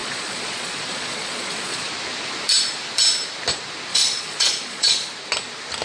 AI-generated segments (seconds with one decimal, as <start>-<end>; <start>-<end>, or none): 0.0-1.9; 3.9-5.1